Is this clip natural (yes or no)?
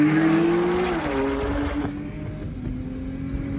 yes